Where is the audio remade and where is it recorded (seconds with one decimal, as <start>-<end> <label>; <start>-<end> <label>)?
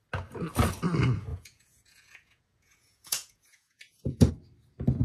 0.0-1.3 recorded; 1.3-4.3 remade; 4.3-5.0 recorded